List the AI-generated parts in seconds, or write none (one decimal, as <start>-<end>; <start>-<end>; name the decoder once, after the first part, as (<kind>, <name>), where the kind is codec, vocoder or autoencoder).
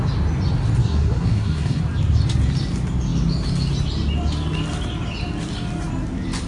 0.8-1.8 (codec, SNAC)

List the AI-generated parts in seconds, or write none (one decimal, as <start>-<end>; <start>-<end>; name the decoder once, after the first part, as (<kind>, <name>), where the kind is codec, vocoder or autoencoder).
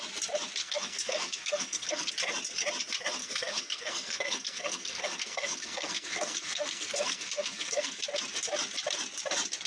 0.6-2.1 (codec, SNAC); 3.2-8.0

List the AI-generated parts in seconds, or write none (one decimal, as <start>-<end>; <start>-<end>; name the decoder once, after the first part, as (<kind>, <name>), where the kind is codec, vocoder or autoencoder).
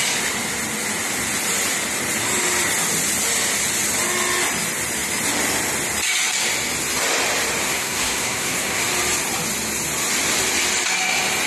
7.6-8.8 (codec, SNAC)